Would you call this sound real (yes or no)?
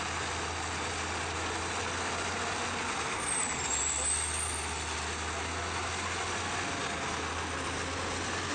yes